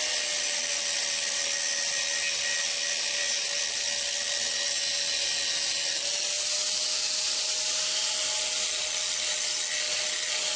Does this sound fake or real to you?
real